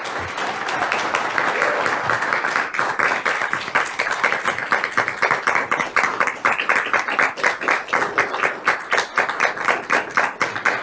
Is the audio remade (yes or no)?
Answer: no